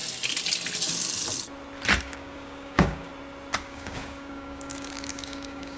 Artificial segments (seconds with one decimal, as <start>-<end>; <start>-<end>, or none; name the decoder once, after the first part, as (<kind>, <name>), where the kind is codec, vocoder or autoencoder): 2.0-3.1 (codec, DAC); 3.6-5.8